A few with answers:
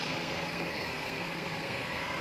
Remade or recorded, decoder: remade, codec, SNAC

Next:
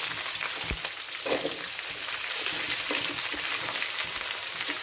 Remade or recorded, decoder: recorded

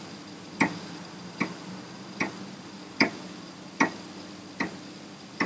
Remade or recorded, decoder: recorded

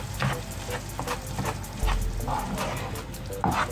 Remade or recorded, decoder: recorded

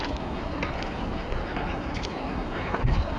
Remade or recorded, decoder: remade, codec, SNAC